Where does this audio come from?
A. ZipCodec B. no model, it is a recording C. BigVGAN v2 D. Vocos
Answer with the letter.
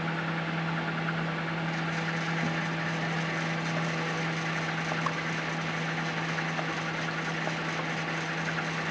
B